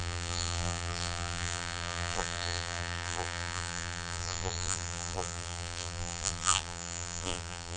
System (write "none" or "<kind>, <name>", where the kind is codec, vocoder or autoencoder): vocoder, BigVGAN v2